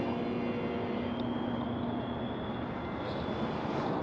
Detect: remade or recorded recorded